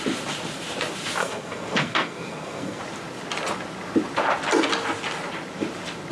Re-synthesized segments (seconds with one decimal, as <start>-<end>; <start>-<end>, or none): 1.2-2.8